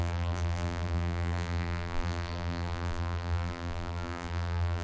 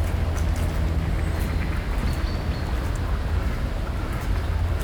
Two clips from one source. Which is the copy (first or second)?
first